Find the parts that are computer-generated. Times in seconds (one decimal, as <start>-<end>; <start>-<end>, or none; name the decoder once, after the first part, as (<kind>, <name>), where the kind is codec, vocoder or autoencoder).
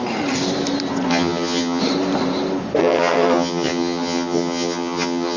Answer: 1.1-1.8 (vocoder, HiFi-GAN); 2.8-5.4